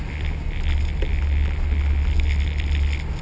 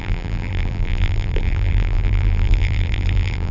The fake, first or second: second